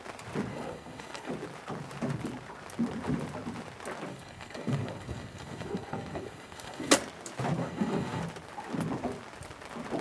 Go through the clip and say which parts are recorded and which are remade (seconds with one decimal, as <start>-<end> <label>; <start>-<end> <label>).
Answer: 0.0-0.5 recorded; 0.5-1.3 remade; 1.3-4.1 recorded; 4.1-6.9 remade; 6.9-7.6 recorded; 7.6-8.2 remade; 8.2-10.0 recorded